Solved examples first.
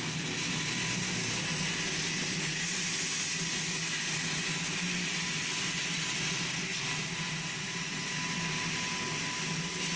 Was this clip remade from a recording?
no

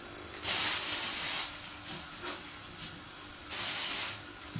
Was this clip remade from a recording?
no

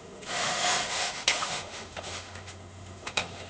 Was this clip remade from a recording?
yes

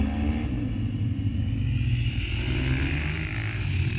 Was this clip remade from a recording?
no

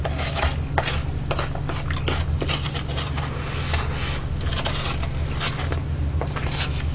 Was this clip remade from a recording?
no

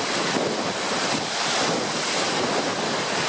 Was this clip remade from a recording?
no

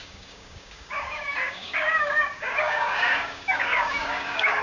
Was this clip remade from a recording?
yes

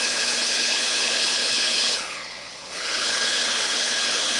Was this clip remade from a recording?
yes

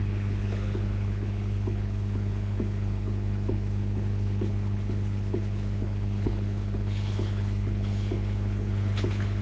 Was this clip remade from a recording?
yes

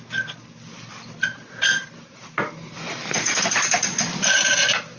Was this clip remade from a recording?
no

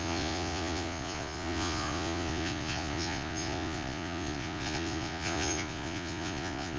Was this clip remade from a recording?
yes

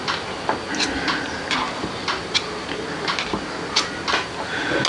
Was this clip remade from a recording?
no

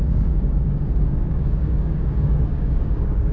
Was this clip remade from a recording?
yes